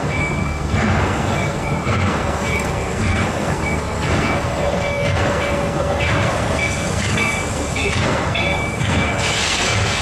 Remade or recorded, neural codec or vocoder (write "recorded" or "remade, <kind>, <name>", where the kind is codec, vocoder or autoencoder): remade, codec, SNAC